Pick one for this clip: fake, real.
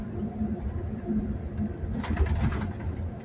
real